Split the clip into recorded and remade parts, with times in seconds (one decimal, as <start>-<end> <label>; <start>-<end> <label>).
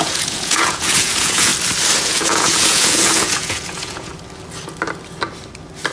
0.0-1.5 remade; 1.5-2.0 recorded; 2.0-4.1 remade; 4.1-5.9 recorded